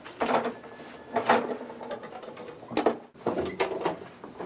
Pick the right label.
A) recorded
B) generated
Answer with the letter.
A